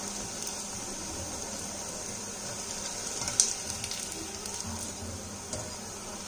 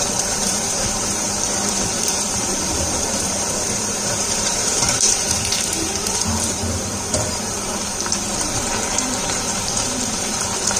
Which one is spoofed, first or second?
second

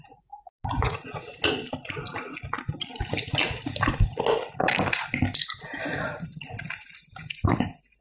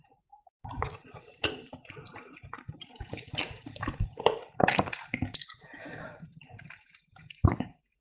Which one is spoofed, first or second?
second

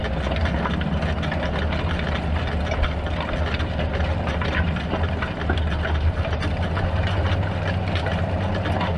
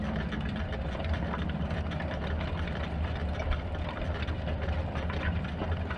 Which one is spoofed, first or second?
second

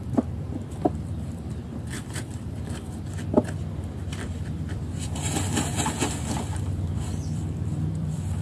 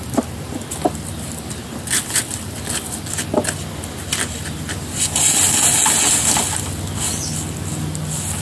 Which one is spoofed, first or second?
first